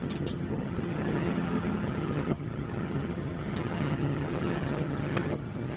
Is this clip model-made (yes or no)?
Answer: yes